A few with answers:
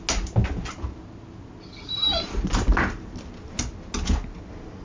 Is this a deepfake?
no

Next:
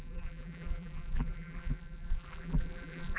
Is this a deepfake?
yes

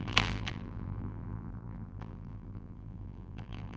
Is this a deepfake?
yes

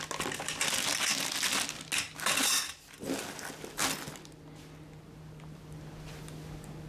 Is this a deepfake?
no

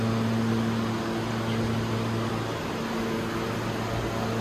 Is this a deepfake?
no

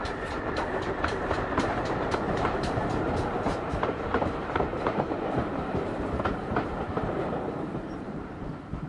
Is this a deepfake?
yes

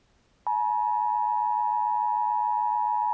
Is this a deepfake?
no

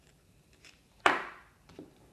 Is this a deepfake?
yes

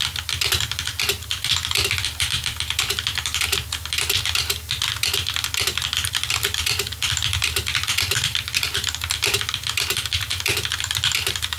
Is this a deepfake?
yes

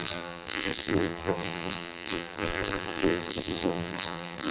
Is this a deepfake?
yes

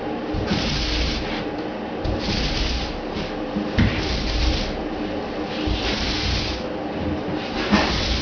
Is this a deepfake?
yes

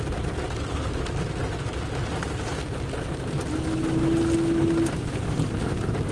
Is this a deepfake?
no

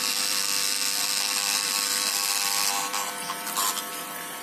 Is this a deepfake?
yes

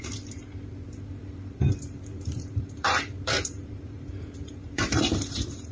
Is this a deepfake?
yes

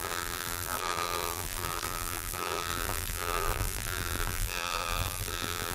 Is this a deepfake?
yes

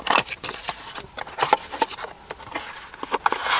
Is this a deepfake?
no